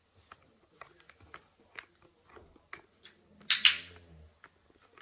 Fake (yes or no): no